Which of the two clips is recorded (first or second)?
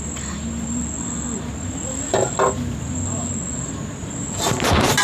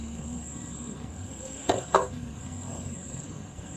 first